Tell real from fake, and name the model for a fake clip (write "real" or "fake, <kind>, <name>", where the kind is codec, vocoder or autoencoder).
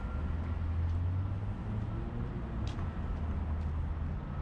real